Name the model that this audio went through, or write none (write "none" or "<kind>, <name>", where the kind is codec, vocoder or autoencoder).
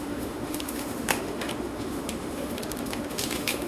autoencoder, DAC-VAE